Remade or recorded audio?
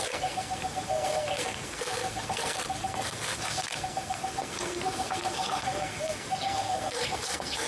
remade